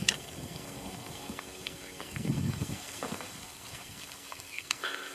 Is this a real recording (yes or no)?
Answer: no